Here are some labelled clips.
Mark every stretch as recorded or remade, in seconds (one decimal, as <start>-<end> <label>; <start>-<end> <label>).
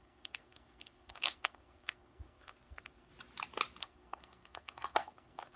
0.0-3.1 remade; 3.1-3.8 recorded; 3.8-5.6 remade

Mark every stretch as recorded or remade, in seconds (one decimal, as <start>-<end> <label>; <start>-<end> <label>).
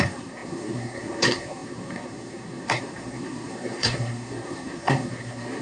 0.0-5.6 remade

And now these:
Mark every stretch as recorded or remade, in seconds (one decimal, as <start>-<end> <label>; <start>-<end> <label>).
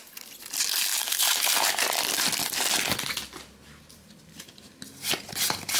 0.0-0.9 recorded; 0.9-1.7 remade; 1.7-5.8 recorded